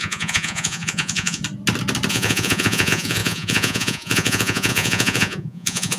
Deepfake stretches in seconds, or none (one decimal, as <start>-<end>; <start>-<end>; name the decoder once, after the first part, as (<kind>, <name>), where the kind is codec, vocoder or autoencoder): 0.0-1.4 (vocoder, Vocos); 2.1-6.0